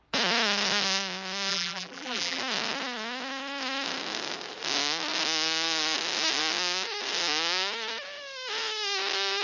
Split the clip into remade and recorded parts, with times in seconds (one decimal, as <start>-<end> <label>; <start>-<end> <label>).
0.0-1.5 recorded; 1.5-2.4 remade; 2.4-9.4 recorded